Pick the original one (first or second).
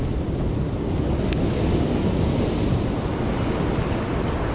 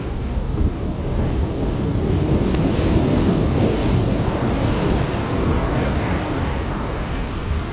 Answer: first